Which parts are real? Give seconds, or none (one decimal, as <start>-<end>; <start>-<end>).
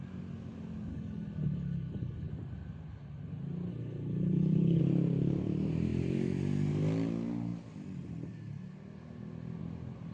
0.0-0.9; 2.3-3.7; 4.8-10.1